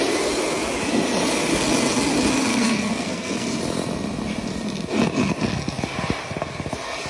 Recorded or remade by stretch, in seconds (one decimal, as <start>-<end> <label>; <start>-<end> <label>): 0.0-2.5 recorded; 2.5-3.6 remade; 3.6-7.1 recorded